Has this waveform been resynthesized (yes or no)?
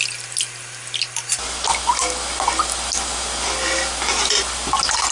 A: no